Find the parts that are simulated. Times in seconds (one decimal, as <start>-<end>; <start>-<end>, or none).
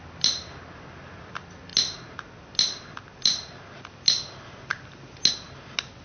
none